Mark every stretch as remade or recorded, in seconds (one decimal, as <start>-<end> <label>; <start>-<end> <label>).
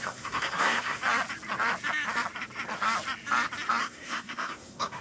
0.0-1.0 remade; 1.0-3.8 recorded; 3.8-5.0 remade